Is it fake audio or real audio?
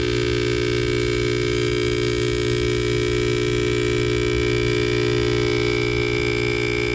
real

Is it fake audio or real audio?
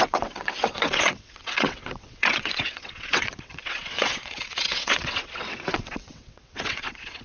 fake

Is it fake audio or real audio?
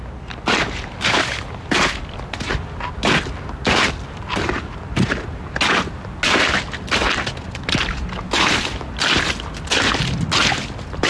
real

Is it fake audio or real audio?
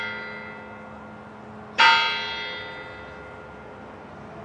real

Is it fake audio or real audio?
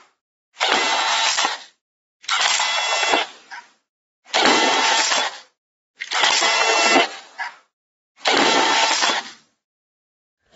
real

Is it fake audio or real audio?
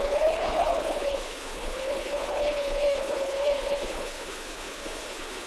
fake